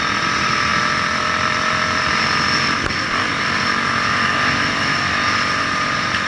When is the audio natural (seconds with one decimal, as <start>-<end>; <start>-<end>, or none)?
0.0-6.3